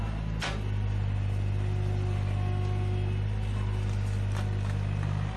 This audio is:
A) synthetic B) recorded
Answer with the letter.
B